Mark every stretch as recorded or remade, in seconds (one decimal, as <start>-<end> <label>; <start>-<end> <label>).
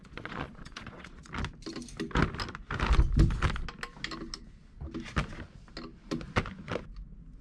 0.0-1.3 remade; 1.3-7.4 recorded